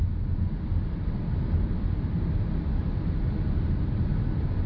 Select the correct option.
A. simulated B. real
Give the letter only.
B